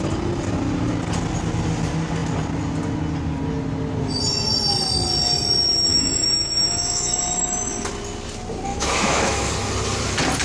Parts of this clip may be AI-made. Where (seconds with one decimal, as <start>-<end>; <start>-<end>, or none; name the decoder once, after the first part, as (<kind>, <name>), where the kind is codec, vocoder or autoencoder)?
5.9-7.2 (autoencoder, DAC-VAE); 8.7-9.5